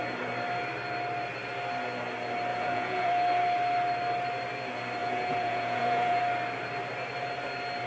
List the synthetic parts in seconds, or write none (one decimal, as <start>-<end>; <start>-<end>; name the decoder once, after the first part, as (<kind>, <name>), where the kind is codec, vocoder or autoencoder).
2.5-3.1 (vocoder, Vocos); 5.0-6.2